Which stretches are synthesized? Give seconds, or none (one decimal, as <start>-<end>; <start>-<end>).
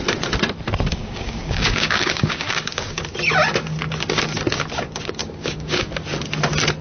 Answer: 1.0-3.0; 5.2-5.9